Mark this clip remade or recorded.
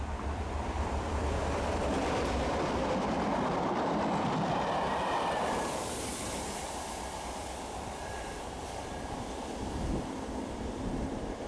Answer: remade